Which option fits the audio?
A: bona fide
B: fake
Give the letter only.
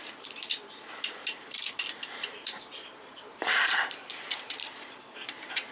B